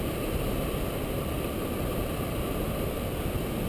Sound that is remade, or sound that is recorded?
recorded